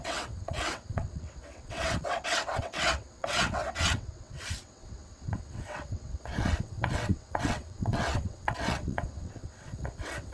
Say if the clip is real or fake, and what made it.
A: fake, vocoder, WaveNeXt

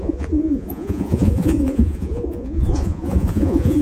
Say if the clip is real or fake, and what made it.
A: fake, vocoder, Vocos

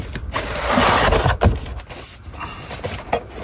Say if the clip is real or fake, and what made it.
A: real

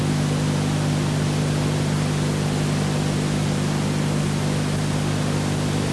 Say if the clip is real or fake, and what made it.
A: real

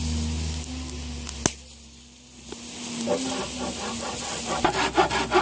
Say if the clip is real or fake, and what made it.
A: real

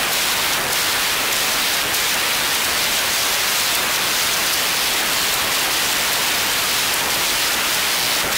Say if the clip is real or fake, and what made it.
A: real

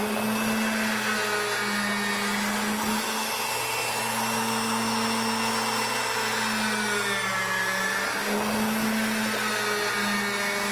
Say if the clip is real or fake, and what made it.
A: real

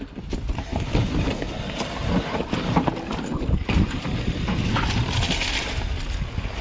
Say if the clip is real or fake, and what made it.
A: real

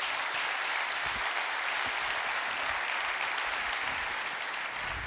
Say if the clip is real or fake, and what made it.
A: real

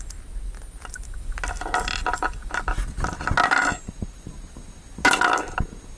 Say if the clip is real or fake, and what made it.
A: real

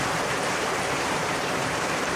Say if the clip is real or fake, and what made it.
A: fake, vocoder, BigVGAN v2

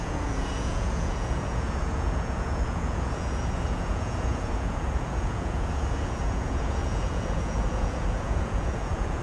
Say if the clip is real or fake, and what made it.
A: fake, vocoder, Vocos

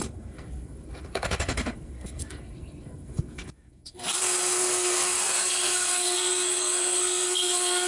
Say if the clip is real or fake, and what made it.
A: fake, codec, SNAC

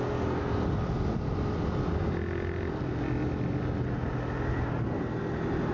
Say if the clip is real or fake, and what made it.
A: real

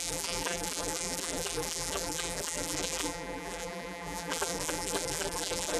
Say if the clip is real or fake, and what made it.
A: fake, vocoder, BigVGAN v2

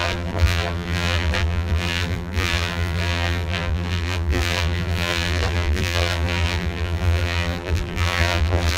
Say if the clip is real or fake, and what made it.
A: fake, vocoder, BigVGAN v2